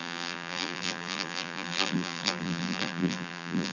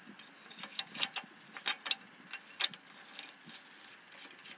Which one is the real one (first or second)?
second